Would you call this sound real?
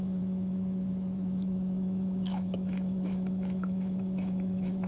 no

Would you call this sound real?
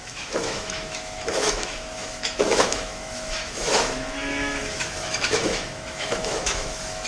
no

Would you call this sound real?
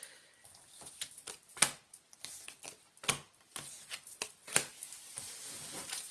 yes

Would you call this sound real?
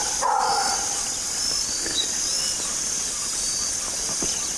yes